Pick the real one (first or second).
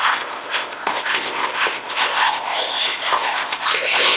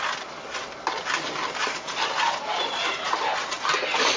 second